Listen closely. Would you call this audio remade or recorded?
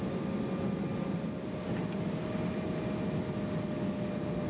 recorded